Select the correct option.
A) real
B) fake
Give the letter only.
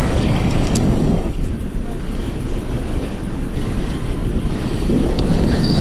B